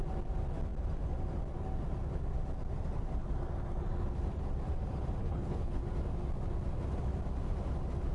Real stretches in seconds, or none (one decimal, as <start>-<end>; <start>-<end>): 0.0-5.2; 5.8-8.1